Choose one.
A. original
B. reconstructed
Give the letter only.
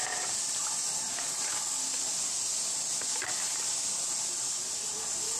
A